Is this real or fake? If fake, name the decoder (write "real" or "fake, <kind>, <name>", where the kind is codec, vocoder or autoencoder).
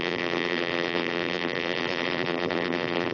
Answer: fake, vocoder, BigVGAN v2